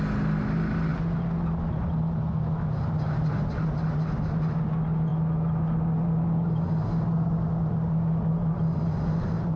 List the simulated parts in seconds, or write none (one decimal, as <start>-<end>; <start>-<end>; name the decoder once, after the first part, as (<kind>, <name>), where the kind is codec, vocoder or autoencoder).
none